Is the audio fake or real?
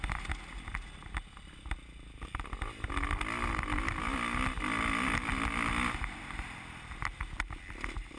real